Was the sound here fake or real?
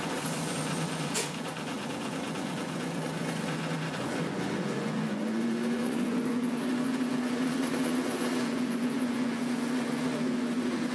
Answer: fake